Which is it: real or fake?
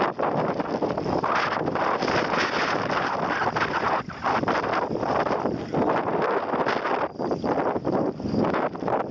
real